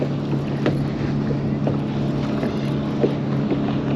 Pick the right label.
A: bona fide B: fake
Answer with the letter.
A